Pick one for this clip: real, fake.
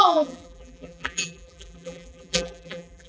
fake